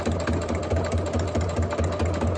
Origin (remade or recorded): recorded